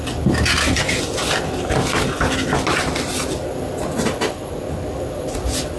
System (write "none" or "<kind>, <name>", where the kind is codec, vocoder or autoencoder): none